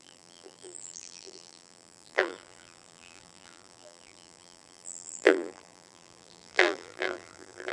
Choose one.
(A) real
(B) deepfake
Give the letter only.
B